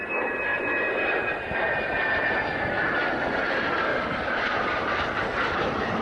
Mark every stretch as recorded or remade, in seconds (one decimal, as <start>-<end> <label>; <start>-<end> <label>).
0.0-3.9 recorded; 3.9-5.2 remade; 5.2-6.0 recorded